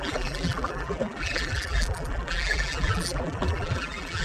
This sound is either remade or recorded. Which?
remade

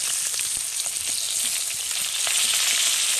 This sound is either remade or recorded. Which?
recorded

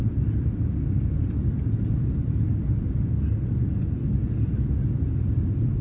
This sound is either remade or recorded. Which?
recorded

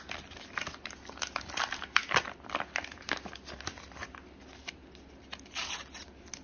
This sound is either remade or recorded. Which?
recorded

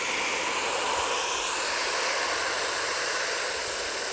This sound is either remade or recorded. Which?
recorded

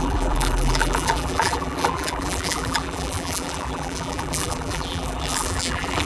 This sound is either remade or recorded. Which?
remade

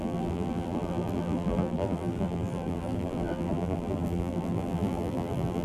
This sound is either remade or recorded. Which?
remade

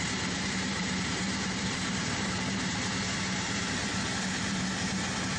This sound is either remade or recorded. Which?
remade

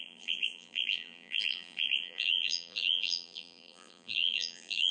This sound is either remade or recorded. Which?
remade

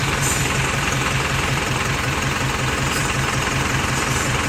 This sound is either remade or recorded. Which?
remade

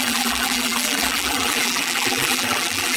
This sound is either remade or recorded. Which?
remade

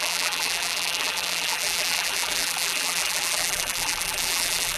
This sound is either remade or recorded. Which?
remade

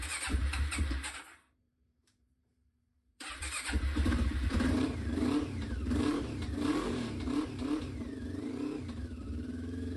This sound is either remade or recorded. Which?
remade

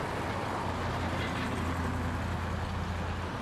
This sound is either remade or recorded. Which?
recorded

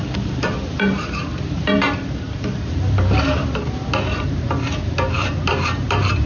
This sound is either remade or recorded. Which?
remade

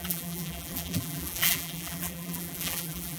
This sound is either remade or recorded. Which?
remade